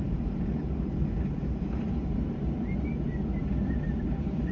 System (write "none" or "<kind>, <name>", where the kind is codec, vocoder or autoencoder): vocoder, BigVGAN v2